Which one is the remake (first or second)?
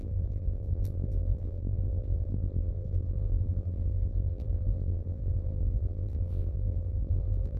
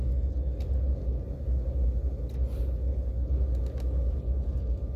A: first